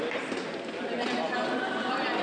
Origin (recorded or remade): recorded